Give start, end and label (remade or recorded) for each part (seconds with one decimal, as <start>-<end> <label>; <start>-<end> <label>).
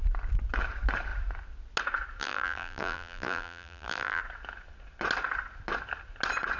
0.0-2.2 recorded; 2.2-4.2 remade; 4.2-6.6 recorded